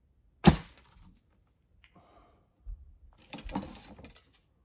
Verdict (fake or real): real